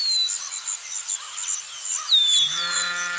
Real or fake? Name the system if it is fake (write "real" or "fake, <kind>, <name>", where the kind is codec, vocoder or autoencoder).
real